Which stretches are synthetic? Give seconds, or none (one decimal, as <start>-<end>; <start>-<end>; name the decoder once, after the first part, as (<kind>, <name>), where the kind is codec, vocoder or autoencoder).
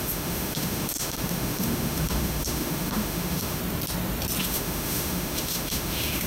0.0-3.6 (autoencoder, DAC-VAE); 4.4-6.3